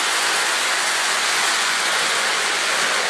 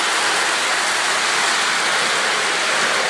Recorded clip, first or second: second